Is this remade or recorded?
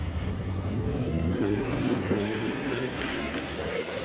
remade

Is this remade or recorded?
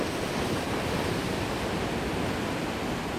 recorded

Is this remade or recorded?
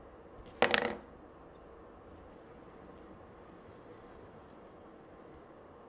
recorded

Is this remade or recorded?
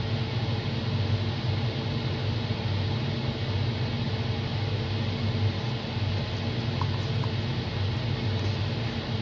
recorded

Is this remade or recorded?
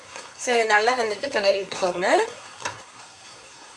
remade